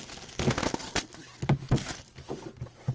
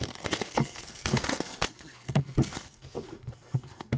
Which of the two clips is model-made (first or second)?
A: second